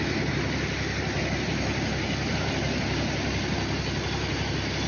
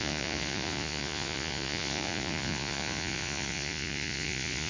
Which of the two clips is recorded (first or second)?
first